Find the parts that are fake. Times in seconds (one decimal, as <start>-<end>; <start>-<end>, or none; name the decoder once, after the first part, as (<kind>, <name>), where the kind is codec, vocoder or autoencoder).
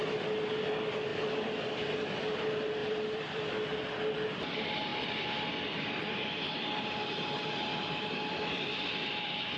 2.8-3.5 (vocoder, BigVGAN v2); 4.9-9.6